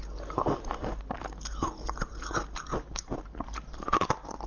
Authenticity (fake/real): real